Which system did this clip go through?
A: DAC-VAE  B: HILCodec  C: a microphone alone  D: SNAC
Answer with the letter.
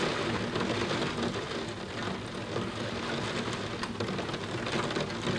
C